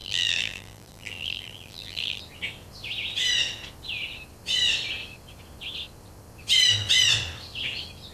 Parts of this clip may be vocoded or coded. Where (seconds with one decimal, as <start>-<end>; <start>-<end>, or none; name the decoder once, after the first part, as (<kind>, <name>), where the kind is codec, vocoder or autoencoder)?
0.0-2.2 (vocoder, BigVGAN v2)